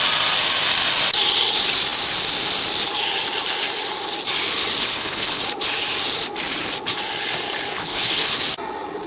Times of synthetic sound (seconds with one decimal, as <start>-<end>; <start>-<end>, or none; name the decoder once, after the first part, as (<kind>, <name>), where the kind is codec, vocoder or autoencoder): 4.8-5.4 (codec, HILCodec); 7.7-8.4